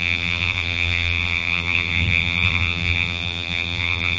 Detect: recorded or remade remade